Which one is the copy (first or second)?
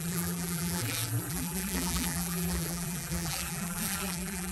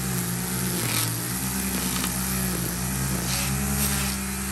first